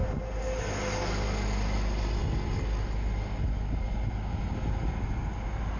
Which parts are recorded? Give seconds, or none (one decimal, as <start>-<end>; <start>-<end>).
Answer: 0.0-5.8